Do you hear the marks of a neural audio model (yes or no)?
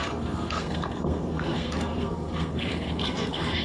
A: yes